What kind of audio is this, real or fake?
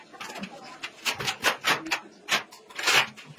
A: real